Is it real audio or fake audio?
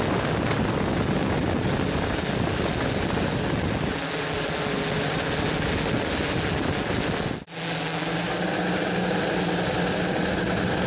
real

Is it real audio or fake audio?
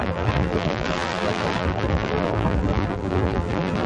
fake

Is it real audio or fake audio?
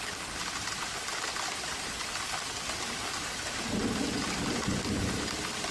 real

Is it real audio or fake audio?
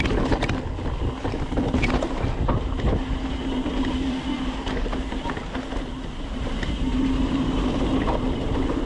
real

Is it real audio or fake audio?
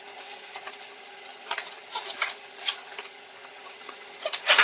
fake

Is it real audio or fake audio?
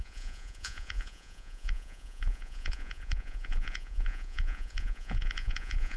fake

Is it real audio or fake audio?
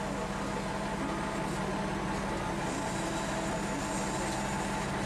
real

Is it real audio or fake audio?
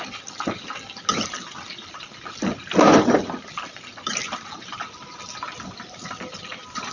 real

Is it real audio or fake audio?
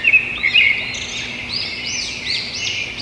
real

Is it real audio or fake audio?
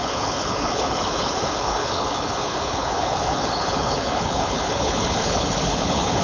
fake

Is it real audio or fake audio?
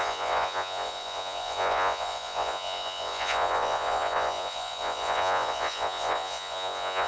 fake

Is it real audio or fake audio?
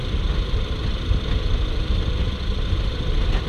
real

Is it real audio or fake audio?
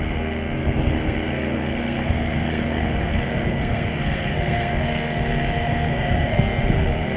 fake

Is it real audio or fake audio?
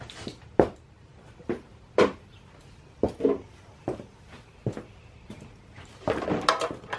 real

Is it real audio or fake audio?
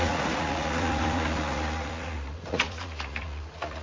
fake